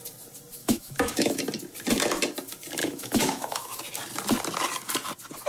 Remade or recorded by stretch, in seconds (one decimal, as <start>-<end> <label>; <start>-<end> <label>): 0.0-0.6 recorded; 0.6-1.4 remade; 1.4-2.8 recorded; 2.8-3.8 remade; 3.8-5.5 recorded

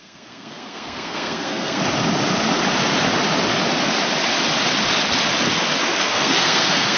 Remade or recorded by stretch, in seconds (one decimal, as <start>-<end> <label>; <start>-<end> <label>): 0.0-1.8 remade; 1.8-6.0 recorded; 6.0-7.0 remade

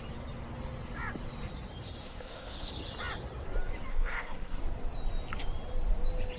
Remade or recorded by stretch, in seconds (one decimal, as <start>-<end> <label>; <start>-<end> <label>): 0.0-2.0 recorded; 2.0-2.7 remade; 2.7-3.9 recorded; 3.9-4.6 remade; 4.6-6.4 recorded

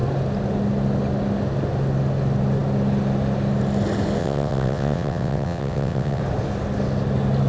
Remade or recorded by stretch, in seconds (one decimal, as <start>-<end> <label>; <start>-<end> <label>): 0.0-4.2 recorded; 4.2-6.2 remade; 6.2-7.5 recorded

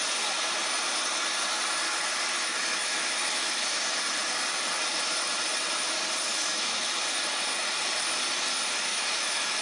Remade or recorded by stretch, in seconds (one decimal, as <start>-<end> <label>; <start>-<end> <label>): 0.0-2.3 recorded; 2.3-3.8 remade; 3.8-6.3 recorded; 6.3-6.9 remade; 6.9-8.9 recorded; 8.9-9.6 remade

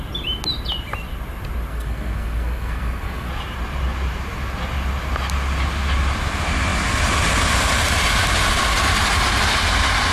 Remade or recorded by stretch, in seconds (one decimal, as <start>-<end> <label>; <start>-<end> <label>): 0.0-1.7 recorded; 1.7-3.3 remade; 3.3-10.1 recorded

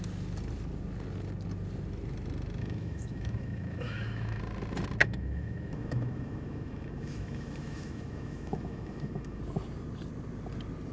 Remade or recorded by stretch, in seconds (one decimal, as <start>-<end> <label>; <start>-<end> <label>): 0.0-2.6 recorded; 2.6-4.4 remade; 4.4-5.0 recorded; 5.0-9.4 remade; 9.4-10.9 recorded